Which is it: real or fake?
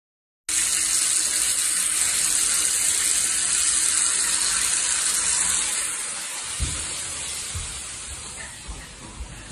real